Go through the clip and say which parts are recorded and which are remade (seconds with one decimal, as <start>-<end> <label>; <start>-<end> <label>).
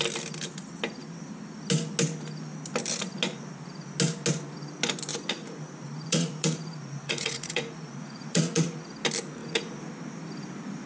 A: 0.0-5.1 recorded; 5.1-8.8 remade; 8.8-9.4 recorded; 9.4-9.9 remade; 9.9-10.9 recorded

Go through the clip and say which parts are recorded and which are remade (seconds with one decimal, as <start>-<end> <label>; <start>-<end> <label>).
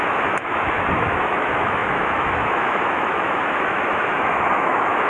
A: 0.0-5.1 remade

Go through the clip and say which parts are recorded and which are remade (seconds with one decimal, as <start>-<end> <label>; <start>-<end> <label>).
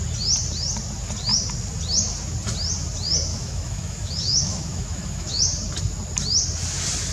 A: 0.0-3.3 recorded; 3.3-5.4 remade; 5.4-7.1 recorded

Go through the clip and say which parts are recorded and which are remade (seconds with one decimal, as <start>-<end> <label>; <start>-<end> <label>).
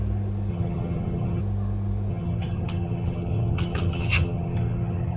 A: 0.0-0.5 recorded; 0.5-1.4 remade; 1.4-2.1 recorded; 2.1-5.2 remade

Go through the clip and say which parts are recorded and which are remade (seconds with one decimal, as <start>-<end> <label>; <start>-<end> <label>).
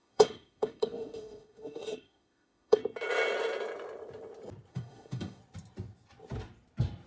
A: 0.0-2.8 remade; 2.8-4.7 recorded; 4.7-5.4 remade; 5.4-7.1 recorded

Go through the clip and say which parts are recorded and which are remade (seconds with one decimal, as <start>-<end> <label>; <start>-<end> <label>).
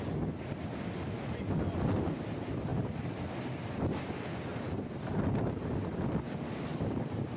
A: 0.0-7.4 recorded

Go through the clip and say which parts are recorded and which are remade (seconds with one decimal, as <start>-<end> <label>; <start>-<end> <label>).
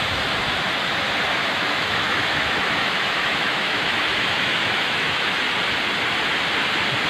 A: 0.0-1.4 recorded; 1.4-5.3 remade; 5.3-7.1 recorded